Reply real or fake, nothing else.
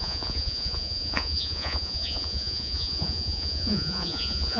fake